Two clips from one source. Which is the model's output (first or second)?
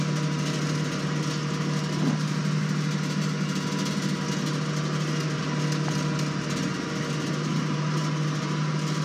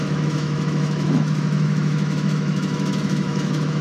second